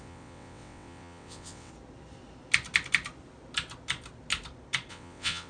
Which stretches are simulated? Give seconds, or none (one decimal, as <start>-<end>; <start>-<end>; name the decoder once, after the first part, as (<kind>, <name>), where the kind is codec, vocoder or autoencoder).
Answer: 0.0-1.7 (vocoder, WaveNeXt); 4.9-5.5